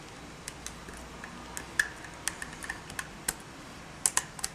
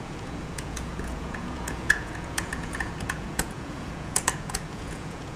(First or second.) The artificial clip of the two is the second